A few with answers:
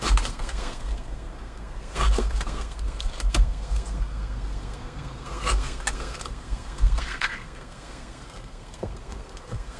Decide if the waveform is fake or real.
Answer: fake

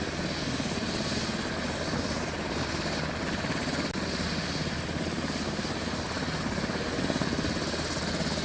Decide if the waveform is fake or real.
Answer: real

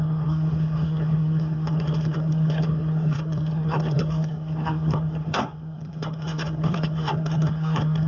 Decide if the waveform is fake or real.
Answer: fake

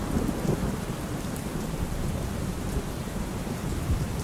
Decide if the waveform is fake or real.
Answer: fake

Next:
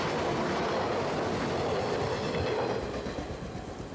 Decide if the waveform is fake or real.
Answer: real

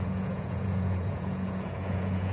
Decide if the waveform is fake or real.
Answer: fake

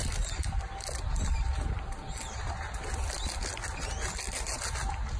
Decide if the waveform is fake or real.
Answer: real